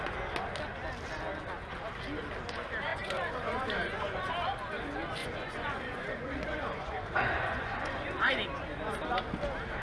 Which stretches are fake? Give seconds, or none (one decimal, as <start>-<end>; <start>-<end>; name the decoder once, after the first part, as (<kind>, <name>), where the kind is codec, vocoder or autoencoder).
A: 2.9-4.3 (vocoder, Vocos); 5.2-8.3